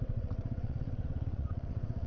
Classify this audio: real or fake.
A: fake